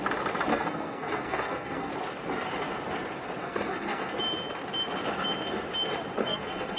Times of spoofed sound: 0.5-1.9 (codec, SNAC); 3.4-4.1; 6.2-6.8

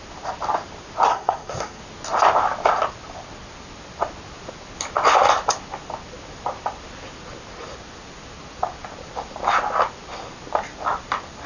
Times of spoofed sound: 1.1-1.8 (codec, SNAC)

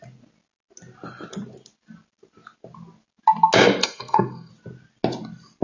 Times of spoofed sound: 3.8-4.5 (codec, SNAC)

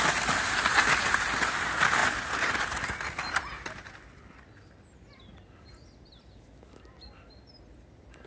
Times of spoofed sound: none